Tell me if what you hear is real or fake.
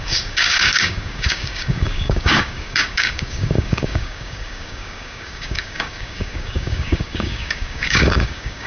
fake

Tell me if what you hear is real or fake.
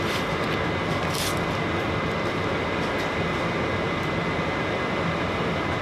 real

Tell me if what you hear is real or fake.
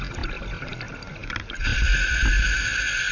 real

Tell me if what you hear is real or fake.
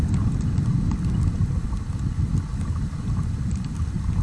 real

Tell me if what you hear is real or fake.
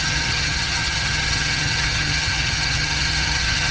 fake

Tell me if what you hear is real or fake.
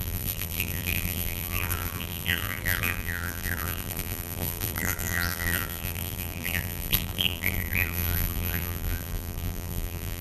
fake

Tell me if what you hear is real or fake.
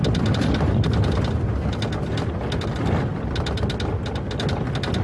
real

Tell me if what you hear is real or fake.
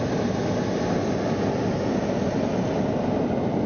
real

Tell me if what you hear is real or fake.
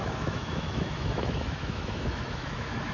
fake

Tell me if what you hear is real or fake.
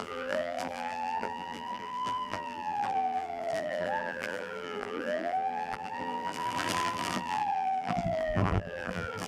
fake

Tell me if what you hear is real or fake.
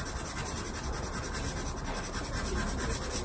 real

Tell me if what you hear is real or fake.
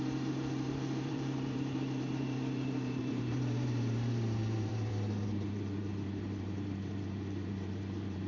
fake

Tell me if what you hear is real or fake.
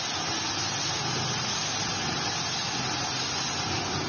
real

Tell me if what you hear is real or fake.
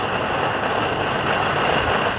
real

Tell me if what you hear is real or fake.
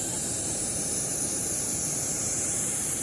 fake